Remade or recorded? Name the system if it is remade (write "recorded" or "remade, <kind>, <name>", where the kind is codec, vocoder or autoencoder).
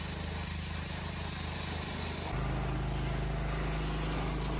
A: recorded